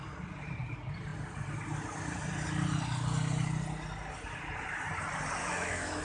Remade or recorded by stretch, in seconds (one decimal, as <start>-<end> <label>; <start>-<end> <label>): 0.0-5.4 recorded; 5.4-6.0 remade